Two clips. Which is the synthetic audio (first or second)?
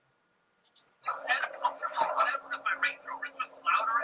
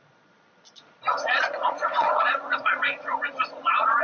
second